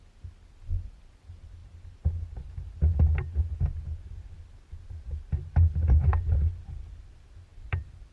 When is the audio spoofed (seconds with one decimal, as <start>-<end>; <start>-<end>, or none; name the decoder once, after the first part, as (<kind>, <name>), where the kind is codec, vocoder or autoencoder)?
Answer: 7.5-8.1 (vocoder, BigVGAN v2)